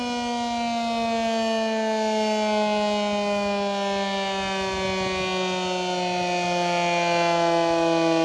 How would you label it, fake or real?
real